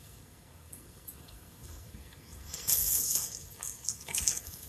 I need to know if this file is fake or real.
fake